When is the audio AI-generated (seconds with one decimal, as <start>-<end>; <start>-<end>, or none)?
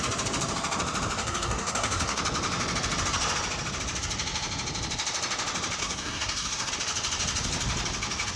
1.2-2.2; 5.8-6.7